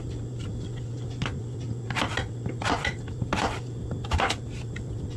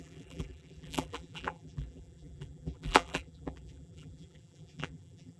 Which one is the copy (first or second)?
second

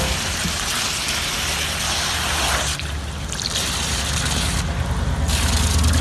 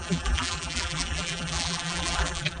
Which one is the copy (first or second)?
second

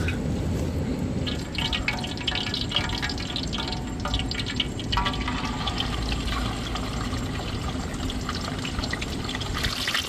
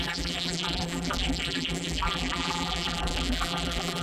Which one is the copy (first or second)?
second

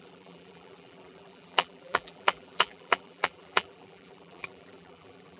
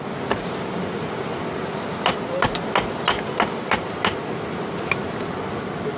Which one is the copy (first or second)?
first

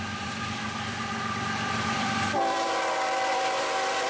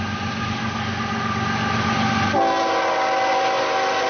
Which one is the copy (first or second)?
first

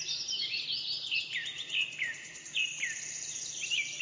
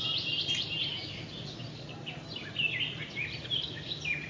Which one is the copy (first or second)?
first